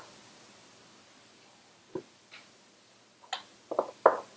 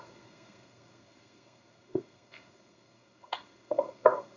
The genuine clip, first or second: first